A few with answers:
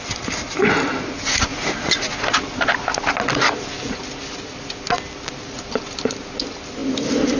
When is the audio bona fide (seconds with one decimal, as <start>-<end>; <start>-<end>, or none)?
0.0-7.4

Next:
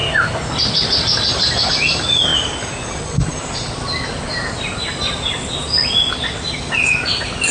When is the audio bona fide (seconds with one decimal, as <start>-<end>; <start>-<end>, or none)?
0.0-7.5

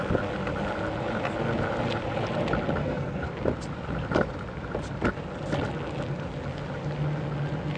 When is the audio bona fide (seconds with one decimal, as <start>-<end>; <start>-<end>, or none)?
0.0-2.8; 3.3-7.8

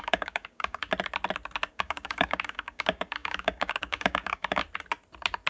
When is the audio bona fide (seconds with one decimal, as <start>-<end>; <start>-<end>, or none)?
0.8-1.7; 4.6-5.5

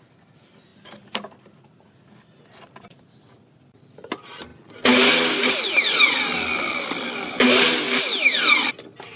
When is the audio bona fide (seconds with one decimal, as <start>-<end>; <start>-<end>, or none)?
0.0-9.2

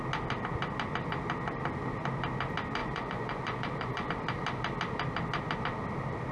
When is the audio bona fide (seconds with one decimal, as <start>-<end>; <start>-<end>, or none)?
0.0-2.8; 4.1-6.3

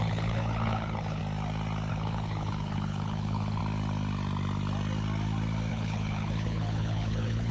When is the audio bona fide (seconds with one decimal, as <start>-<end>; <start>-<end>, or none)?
1.2-1.9; 3.6-5.7